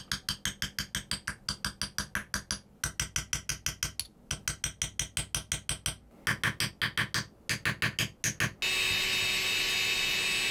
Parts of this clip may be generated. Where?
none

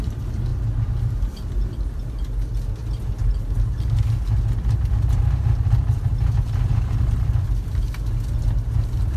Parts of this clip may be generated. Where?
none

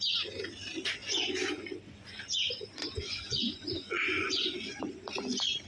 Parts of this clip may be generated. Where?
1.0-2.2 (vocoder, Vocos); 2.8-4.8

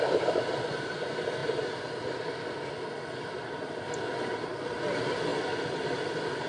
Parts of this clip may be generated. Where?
none

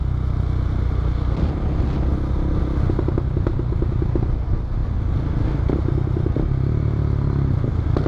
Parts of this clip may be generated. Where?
none

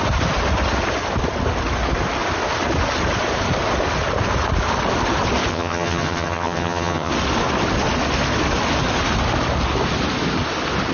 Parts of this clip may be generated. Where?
5.5-7.1 (vocoder, HiFi-GAN)